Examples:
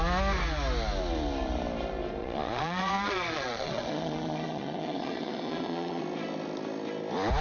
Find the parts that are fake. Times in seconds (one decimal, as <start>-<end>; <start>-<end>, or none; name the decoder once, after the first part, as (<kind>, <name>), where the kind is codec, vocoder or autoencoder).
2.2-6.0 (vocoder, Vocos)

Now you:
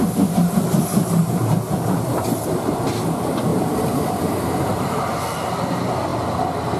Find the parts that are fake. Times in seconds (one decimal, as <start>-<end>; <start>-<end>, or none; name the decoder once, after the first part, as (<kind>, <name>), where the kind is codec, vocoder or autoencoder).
2.1-2.8 (vocoder, BigVGAN v2); 3.5-5.2

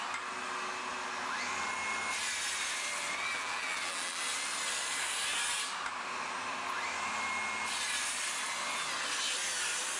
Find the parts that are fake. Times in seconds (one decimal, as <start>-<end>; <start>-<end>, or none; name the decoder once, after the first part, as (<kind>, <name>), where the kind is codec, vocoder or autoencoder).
3.3-4.2 (vocoder, BigVGAN v2)

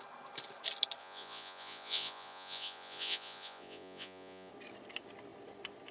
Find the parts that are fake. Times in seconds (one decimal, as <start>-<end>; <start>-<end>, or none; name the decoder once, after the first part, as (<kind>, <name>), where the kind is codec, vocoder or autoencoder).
1.0-4.5 (vocoder, Vocos)

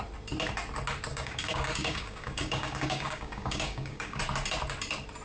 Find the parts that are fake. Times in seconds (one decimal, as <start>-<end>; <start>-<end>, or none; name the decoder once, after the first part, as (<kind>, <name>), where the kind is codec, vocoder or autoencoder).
1.1-4.2 (codec, DAC)

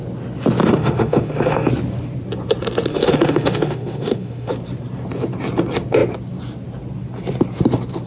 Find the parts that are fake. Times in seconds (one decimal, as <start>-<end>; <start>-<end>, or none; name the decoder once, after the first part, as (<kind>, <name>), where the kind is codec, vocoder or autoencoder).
0.6-1.7 (autoencoder, DAC-VAE); 2.9-4.5